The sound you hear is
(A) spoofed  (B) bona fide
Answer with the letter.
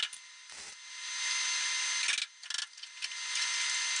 B